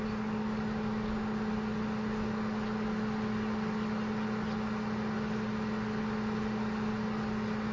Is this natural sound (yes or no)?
yes